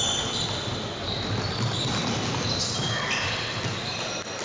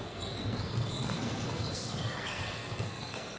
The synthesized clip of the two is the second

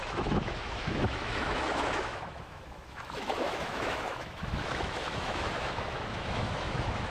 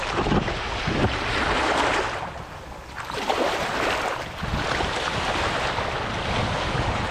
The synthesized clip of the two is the first